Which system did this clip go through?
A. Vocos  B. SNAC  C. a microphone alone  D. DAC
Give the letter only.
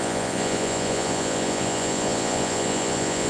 A